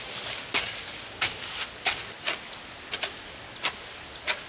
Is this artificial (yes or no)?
no